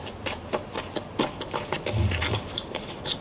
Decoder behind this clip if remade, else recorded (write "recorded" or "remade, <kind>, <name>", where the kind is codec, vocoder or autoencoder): recorded